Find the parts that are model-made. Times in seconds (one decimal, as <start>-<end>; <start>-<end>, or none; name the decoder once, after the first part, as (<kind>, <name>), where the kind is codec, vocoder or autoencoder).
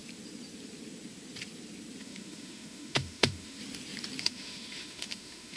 2.0-3.6 (autoencoder, DAC-VAE); 4.2-5.6